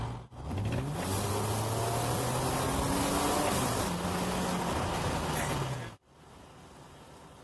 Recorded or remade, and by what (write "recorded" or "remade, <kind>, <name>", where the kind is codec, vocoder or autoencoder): recorded